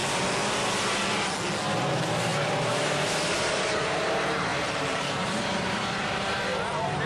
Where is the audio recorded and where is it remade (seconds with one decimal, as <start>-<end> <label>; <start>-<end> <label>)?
0.0-1.8 recorded; 1.8-7.1 remade